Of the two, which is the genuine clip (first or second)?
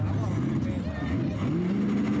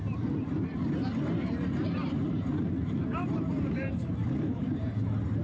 first